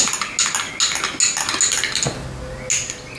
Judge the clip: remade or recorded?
recorded